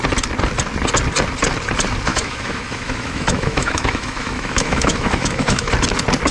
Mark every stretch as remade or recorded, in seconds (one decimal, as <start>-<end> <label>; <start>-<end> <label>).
0.0-2.1 recorded; 2.1-5.7 remade; 5.7-6.3 recorded